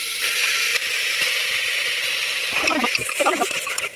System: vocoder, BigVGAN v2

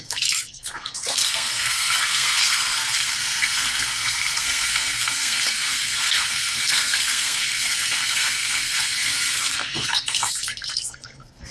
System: codec, SNAC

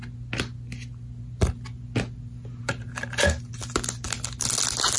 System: none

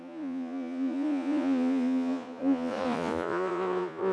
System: vocoder, Vocos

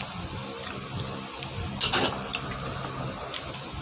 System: none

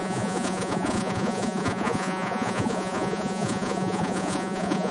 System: vocoder, Vocos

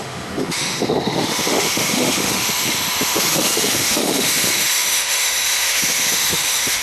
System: autoencoder, DAC-VAE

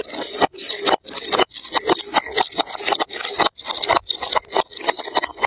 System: vocoder, BigVGAN v2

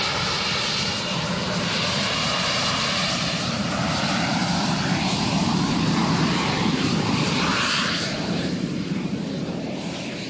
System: vocoder, BigVGAN v2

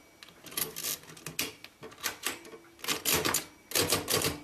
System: none